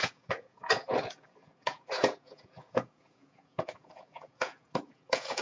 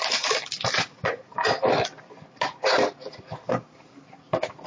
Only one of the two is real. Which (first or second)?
second